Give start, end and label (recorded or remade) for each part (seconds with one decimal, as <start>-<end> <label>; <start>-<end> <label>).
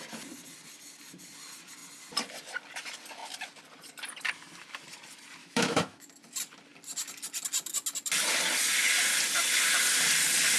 0.0-5.4 recorded; 5.4-6.1 remade; 6.1-10.6 recorded